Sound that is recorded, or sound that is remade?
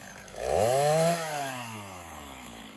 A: remade